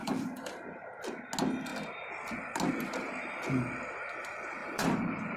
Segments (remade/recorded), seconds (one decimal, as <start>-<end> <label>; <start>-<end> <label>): 0.0-0.9 remade; 0.9-4.6 recorded; 4.6-5.4 remade